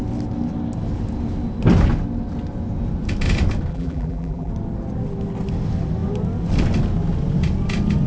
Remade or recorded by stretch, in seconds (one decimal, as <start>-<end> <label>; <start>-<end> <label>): 0.0-3.7 recorded; 3.7-4.5 remade; 4.5-8.1 recorded